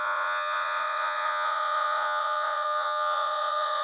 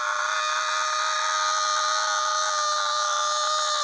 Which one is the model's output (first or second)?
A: first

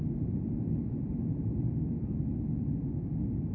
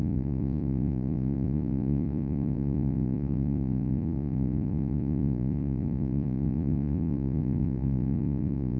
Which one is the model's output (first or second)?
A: second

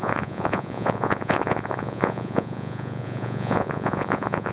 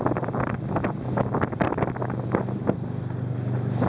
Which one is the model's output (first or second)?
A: first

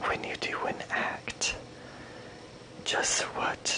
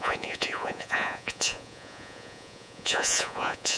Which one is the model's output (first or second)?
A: second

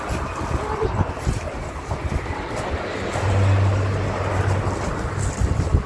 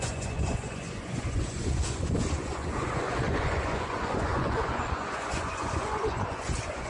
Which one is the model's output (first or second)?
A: second